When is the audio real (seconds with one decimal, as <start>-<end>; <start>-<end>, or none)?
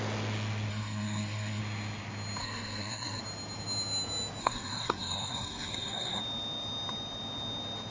0.0-0.7; 1.6-2.4; 3.2-4.4; 6.2-7.9